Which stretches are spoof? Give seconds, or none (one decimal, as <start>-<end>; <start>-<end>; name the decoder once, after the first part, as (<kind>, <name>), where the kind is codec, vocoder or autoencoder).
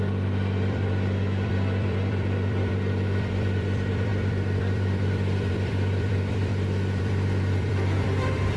0.0-6.5 (vocoder, BigVGAN v2); 7.0-8.6